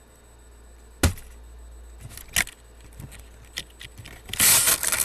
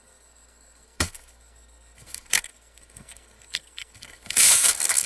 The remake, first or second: second